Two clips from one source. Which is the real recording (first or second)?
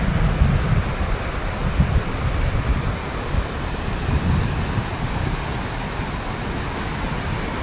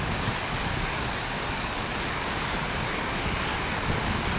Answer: first